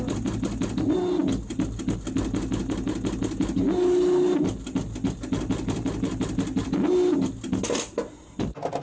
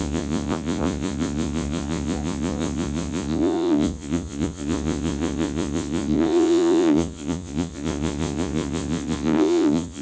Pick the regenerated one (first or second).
second